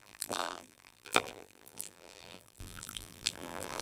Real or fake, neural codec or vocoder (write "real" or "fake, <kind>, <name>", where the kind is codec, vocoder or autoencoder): fake, vocoder, BigVGAN v2